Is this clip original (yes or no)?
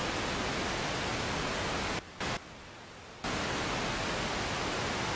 yes